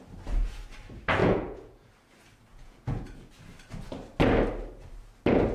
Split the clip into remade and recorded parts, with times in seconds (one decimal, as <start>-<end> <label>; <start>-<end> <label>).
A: 0.0-1.2 recorded; 1.2-1.9 remade; 1.9-2.5 recorded; 2.5-3.3 remade; 3.3-5.5 recorded